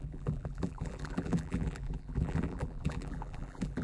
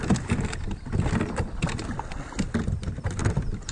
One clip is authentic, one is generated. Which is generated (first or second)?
first